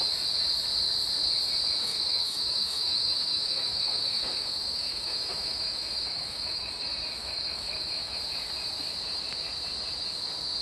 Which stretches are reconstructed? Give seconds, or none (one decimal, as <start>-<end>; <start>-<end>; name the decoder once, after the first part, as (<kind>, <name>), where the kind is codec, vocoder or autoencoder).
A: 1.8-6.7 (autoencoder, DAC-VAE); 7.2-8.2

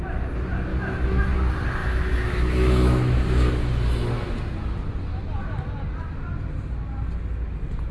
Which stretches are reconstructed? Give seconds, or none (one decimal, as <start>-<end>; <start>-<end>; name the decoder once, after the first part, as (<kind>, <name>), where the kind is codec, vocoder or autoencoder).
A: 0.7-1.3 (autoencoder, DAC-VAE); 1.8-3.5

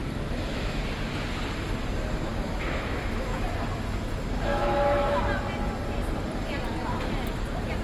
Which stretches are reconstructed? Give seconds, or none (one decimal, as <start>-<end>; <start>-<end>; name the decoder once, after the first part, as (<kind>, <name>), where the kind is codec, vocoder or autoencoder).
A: 0.0-0.8 (autoencoder, DAC-VAE); 2.3-3.4; 4.5-5.2

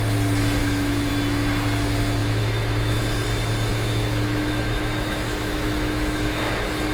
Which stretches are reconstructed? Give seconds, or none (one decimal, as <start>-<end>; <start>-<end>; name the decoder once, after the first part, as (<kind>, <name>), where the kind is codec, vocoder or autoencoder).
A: 0.6-1.1 (autoencoder, DAC-VAE); 2.2-3.0; 3.7-6.4

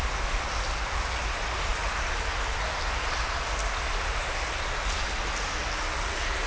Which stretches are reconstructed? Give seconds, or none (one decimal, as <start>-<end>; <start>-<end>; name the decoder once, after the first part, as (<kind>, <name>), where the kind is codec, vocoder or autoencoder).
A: none